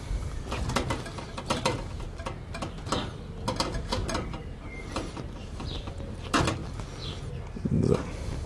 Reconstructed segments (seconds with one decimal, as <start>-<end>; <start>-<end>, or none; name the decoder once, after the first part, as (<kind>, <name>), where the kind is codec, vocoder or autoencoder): 4.0-5.9 (vocoder, BigVGAN v2)